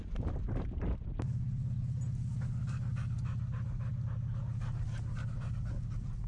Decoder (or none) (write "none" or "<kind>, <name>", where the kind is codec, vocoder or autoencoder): none